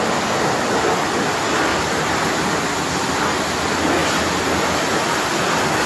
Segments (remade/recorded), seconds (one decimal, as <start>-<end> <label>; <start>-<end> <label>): 0.0-1.7 recorded; 1.7-2.6 remade; 2.6-5.9 recorded